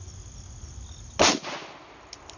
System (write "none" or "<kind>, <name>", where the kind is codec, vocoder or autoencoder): none